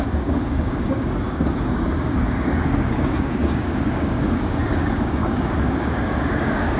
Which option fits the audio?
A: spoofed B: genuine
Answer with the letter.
A